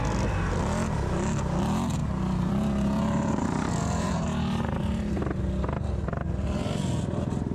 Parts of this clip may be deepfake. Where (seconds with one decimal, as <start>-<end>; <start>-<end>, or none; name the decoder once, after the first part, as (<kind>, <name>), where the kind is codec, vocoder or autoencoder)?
2.0-5.3 (vocoder, BigVGAN v2)